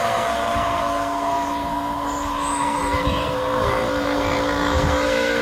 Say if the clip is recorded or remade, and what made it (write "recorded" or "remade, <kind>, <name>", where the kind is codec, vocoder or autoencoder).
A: remade, codec, SNAC